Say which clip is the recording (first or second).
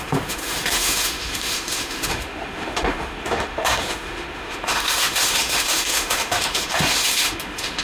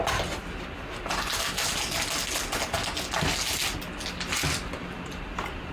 second